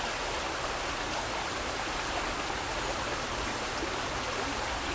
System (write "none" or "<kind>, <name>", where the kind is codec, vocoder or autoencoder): none